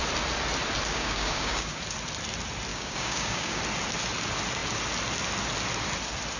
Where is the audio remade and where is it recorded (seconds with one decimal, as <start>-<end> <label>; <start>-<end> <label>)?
0.0-0.9 recorded; 0.9-1.8 remade; 1.8-2.7 recorded; 2.7-3.6 remade; 3.6-6.4 recorded